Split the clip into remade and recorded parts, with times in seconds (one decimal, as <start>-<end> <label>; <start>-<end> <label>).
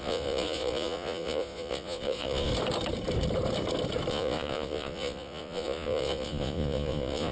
0.0-2.5 remade; 2.5-4.1 recorded; 4.1-7.3 remade